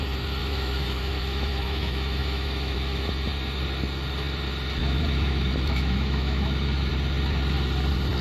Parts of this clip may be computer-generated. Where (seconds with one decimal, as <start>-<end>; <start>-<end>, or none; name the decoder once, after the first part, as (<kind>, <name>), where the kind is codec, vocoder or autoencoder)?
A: 0.4-3.1 (autoencoder, DAC-VAE); 4.8-6.9